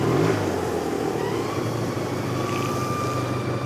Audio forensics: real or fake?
real